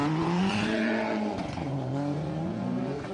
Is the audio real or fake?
fake